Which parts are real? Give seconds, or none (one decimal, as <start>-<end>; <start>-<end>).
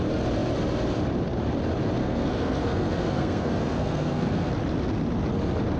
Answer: 0.0-2.0; 4.5-5.8